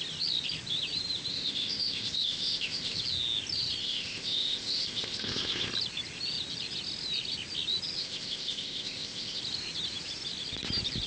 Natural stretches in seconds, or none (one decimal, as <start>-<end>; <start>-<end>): 0.0-1.3; 3.0-3.8; 5.7-8.0; 9.4-11.1